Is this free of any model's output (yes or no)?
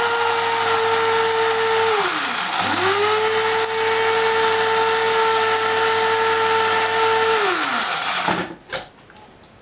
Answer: yes